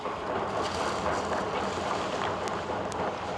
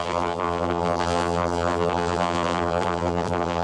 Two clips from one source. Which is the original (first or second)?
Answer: first